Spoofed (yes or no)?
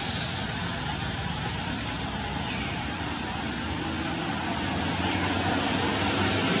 no